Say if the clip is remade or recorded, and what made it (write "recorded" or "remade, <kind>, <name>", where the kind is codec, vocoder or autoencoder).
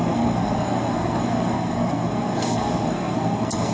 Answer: remade, codec, SNAC